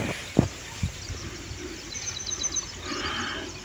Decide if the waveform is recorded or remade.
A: recorded